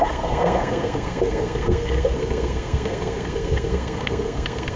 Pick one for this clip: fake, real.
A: fake